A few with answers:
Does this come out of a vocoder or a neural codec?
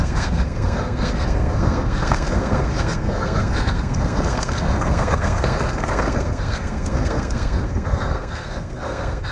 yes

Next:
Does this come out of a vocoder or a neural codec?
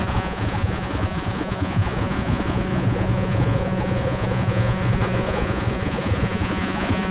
yes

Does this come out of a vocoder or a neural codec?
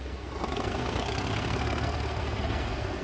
yes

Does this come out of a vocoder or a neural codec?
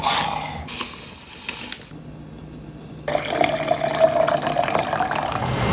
no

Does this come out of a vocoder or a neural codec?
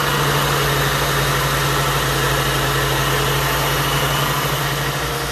no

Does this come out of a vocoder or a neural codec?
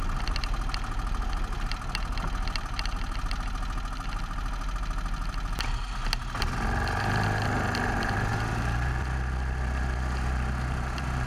no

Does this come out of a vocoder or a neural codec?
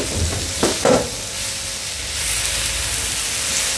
no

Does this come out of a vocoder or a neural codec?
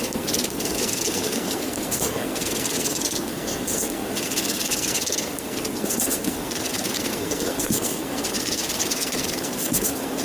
yes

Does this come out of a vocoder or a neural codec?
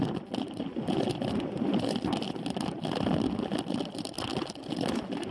no